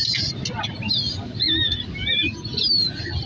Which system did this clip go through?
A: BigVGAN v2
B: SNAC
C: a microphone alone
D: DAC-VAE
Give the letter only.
C